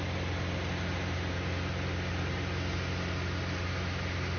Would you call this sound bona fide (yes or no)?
yes